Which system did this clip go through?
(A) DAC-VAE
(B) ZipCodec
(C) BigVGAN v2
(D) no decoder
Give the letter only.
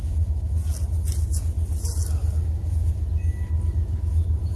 D